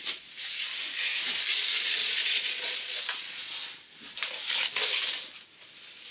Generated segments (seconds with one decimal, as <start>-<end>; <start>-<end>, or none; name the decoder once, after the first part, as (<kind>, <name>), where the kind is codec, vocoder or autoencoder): 2.0-3.4 (vocoder, Vocos)